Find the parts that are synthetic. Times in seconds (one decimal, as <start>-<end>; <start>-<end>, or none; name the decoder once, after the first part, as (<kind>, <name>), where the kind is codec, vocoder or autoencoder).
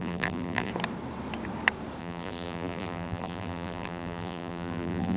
0.0-0.7 (vocoder, BigVGAN v2); 2.0-5.2